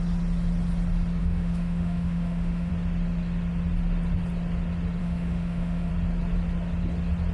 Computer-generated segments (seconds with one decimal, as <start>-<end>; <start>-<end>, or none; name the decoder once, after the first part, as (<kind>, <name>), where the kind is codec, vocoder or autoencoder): 1.2-2.7 (autoencoder, DAC-VAE); 5.0-5.9